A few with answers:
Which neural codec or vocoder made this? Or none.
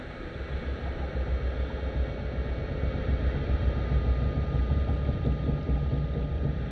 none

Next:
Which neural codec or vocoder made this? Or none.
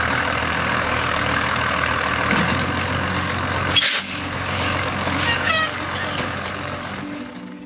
codec, DAC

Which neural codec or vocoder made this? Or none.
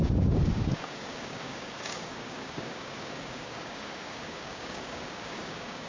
codec, DAC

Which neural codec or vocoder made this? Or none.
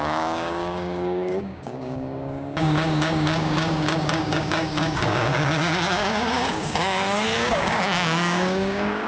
codec, DAC